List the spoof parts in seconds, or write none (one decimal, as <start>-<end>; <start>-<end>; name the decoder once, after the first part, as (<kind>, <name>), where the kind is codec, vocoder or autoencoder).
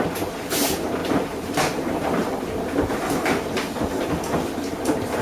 1.0-3.5 (vocoder, BigVGAN v2)